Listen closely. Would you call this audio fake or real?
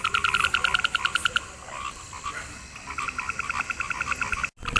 real